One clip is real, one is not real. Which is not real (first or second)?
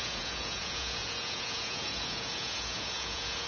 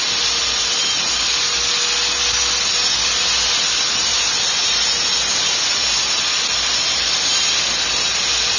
first